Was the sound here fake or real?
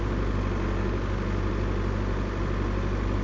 real